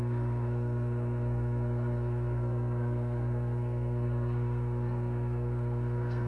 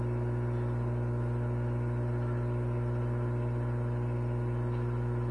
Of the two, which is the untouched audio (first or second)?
second